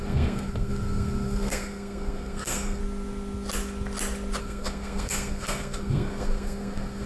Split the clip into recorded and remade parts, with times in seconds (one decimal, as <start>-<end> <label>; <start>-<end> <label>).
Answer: 0.0-2.8 remade; 2.8-4.4 recorded; 4.4-7.1 remade